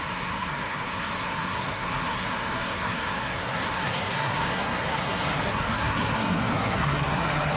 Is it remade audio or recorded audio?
remade